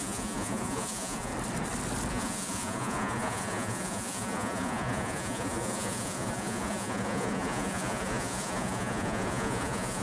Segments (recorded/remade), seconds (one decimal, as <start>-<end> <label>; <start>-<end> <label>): 0.0-1.3 remade; 1.3-2.1 recorded; 2.1-10.0 remade